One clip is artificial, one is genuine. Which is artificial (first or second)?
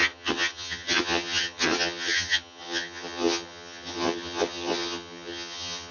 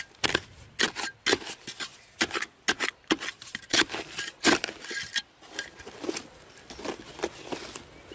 first